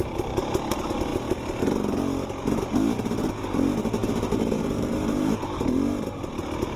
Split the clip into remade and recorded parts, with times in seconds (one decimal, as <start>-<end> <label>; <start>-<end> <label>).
0.0-4.0 recorded; 4.0-5.6 remade; 5.6-6.8 recorded